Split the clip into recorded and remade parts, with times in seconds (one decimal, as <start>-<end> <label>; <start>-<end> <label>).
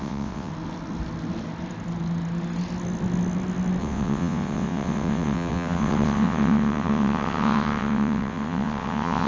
0.0-0.5 remade; 0.5-3.8 recorded; 3.8-9.3 remade